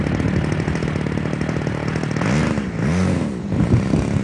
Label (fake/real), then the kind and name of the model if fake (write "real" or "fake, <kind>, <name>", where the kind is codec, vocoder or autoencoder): real